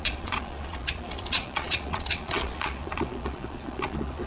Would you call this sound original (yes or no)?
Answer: no